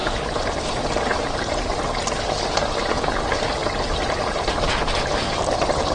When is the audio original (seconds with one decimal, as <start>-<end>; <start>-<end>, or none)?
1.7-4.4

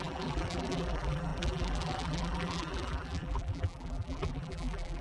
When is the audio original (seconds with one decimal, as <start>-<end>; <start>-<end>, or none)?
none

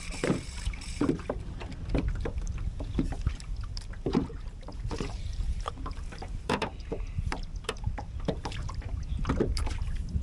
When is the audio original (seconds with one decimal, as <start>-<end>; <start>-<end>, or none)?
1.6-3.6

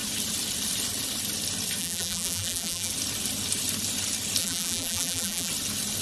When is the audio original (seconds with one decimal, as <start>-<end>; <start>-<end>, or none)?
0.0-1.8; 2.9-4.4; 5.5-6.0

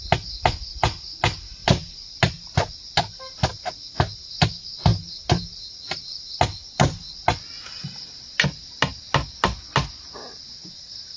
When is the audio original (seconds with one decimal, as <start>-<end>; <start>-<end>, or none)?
0.0-11.2

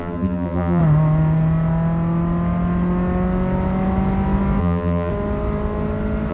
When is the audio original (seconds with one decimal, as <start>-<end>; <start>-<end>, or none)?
0.8-4.6; 5.1-6.3

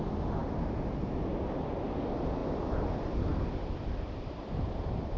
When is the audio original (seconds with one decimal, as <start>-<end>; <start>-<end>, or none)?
0.0-5.2

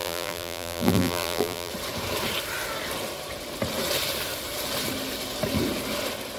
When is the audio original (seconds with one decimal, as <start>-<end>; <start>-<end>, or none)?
1.7-6.4